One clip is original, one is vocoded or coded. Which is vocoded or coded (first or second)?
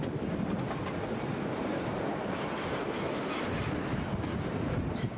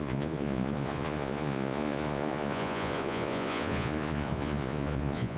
second